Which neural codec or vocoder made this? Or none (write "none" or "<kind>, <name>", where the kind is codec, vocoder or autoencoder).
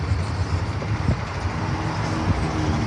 none